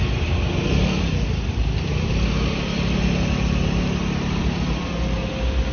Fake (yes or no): no